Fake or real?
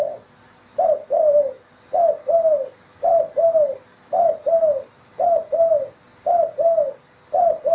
real